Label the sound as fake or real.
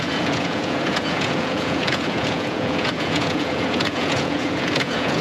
fake